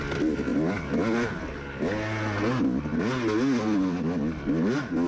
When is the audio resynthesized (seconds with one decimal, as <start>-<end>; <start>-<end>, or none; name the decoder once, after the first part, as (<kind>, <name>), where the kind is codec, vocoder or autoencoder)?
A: none